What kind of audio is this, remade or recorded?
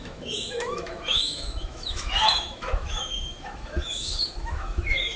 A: remade